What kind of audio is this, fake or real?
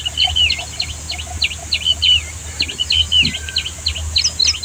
real